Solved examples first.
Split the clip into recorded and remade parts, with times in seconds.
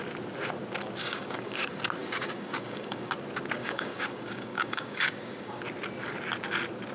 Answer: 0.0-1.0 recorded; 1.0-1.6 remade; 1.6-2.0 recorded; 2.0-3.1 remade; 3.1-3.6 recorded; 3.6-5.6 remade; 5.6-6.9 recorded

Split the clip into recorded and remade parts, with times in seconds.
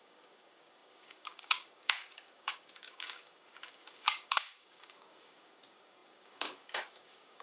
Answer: 0.0-7.4 remade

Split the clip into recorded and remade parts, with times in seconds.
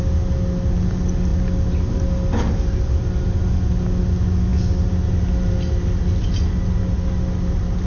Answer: 0.0-7.9 recorded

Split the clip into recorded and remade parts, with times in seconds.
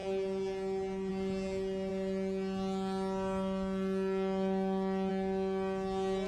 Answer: 0.0-6.3 recorded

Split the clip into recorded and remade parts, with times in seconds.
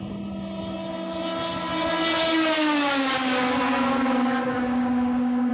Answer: 0.0-2.0 recorded; 2.0-5.5 remade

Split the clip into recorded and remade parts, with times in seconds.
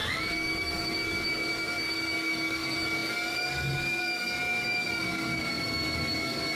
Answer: 0.0-6.5 remade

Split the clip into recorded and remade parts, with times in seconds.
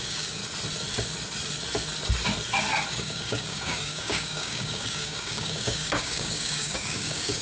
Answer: 0.0-0.4 remade; 0.4-2.9 recorded; 2.9-7.4 remade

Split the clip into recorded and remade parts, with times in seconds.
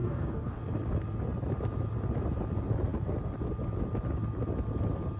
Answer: 0.0-0.6 remade; 0.6-5.2 recorded